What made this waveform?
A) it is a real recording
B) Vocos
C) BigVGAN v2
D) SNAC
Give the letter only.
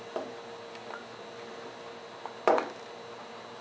A